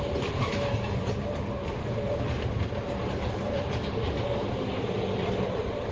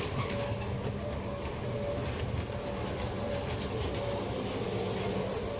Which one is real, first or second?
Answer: second